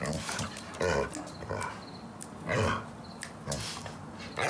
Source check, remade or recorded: recorded